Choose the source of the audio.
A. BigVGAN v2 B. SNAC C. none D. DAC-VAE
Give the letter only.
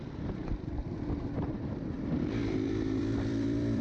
A